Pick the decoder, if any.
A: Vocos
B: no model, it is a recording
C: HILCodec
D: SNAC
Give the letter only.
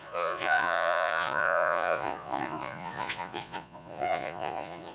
A